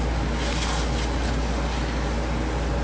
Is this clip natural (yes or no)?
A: yes